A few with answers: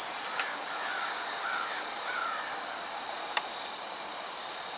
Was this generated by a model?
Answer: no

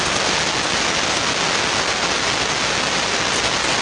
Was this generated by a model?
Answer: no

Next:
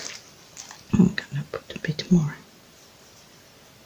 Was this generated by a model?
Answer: no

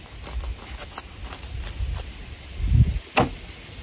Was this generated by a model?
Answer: no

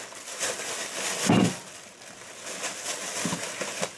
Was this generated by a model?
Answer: no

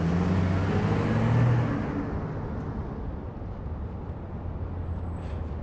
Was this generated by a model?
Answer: no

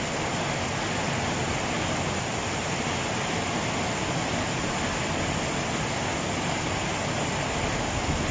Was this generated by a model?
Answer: no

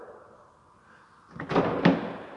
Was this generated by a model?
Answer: no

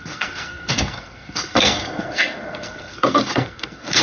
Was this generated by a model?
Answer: yes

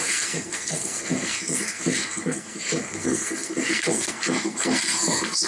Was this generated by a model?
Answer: yes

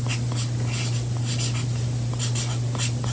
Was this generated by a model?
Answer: no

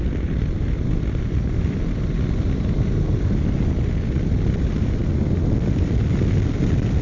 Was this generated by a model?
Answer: no